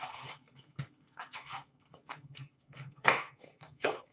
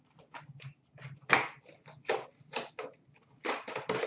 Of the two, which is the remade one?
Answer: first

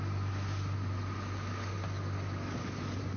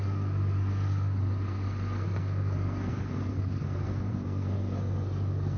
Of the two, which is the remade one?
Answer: second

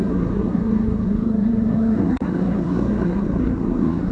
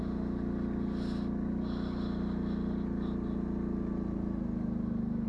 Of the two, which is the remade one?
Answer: first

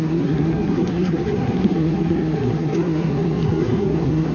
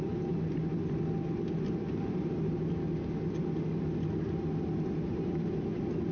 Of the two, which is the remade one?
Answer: first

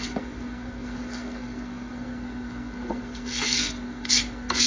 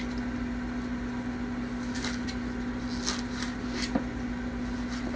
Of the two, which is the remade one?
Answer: first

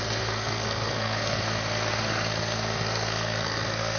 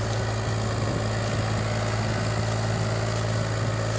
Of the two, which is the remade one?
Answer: first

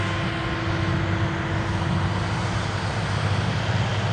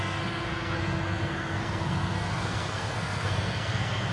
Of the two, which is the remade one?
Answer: second